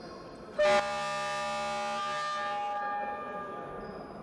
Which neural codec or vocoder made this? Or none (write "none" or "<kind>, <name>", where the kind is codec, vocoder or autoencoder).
none